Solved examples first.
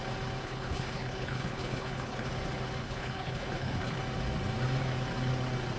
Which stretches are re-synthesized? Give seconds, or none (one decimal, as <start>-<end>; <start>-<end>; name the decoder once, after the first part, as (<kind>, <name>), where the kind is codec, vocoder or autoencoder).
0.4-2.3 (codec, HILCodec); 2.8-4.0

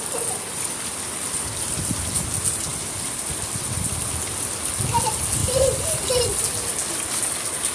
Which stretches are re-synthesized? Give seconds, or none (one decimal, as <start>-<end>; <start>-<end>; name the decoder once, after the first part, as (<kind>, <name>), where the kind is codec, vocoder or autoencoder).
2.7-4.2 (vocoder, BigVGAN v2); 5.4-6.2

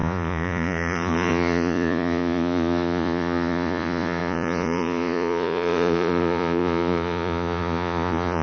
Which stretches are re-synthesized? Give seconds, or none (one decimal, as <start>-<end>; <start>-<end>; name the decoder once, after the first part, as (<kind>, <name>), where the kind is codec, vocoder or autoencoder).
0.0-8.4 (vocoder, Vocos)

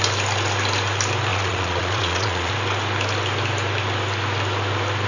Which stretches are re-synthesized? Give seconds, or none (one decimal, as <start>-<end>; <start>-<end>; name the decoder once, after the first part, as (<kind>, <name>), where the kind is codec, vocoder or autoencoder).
1.3-2.5 (vocoder, Vocos)

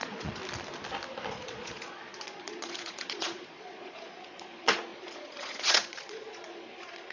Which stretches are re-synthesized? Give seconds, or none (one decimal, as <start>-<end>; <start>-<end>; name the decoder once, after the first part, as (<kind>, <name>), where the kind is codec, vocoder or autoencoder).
0.0-0.4 (vocoder, Vocos); 1.3-7.1

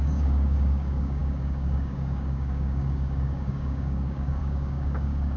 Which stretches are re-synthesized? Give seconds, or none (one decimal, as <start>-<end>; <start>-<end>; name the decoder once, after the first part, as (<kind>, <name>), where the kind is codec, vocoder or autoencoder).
0.0-5.4 (codec, DAC)